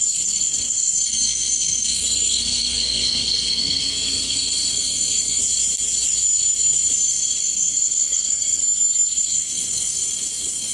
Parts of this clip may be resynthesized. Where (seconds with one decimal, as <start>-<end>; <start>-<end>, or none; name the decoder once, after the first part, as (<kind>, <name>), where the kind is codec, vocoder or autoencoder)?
0.0-5.4 (codec, SNAC); 7.1-8.6; 9.2-10.7